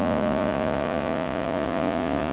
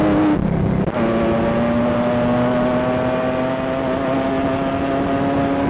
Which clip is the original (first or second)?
second